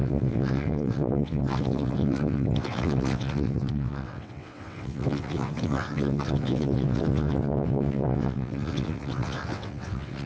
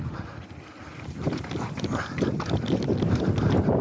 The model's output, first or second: first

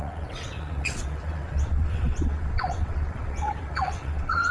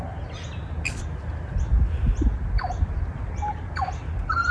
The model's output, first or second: first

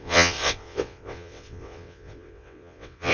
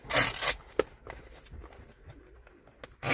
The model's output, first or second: first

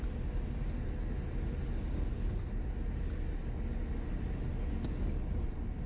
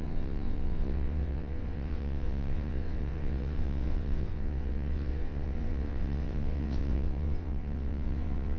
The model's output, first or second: second